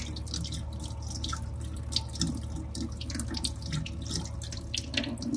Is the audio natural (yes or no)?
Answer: yes